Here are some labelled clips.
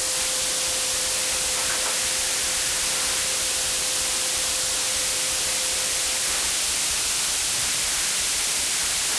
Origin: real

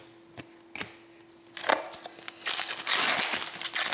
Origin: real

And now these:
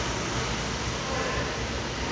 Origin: real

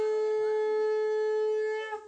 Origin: real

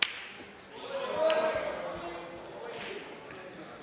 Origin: real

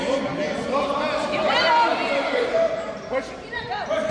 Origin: real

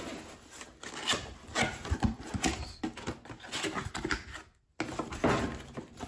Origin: real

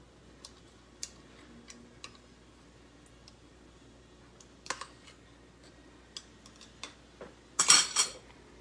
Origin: real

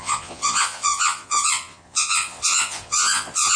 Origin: fake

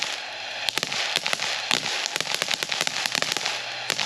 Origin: real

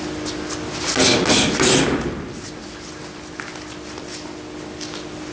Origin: real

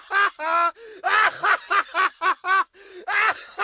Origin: real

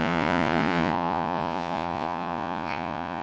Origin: fake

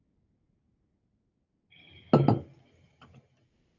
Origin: real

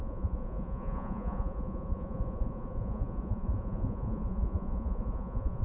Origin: fake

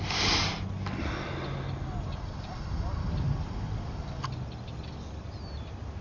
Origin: real